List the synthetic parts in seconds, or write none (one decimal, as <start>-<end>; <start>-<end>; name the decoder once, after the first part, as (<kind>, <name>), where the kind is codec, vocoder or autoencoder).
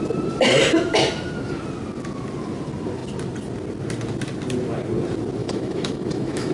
5.4-6.5 (autoencoder, DAC-VAE)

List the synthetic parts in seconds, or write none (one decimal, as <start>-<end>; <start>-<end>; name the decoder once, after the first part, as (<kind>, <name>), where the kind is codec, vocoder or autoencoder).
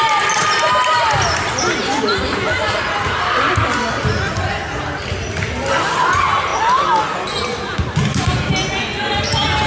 none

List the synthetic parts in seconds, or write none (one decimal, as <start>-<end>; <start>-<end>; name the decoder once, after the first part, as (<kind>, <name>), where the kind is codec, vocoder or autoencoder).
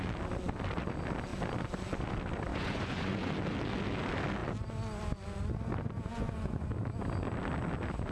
2.5-3.3 (vocoder, Vocos); 6.1-6.7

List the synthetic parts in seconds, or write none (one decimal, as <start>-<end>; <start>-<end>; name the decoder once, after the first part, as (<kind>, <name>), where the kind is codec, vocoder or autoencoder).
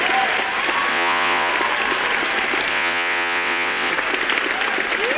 0.9-1.5 (vocoder, WaveNeXt); 2.7-3.9